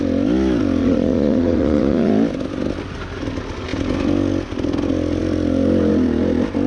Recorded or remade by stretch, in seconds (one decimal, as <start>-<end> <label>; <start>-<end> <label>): 0.0-0.8 recorded; 0.8-2.1 remade; 2.1-6.7 recorded